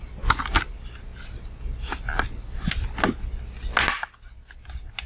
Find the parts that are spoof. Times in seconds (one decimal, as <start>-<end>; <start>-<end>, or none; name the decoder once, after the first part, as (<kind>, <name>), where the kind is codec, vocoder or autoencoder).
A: none